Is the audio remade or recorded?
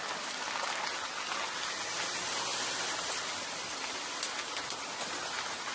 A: recorded